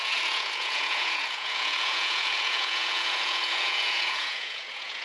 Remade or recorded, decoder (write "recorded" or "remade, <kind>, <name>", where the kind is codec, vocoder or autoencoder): remade, vocoder, Vocos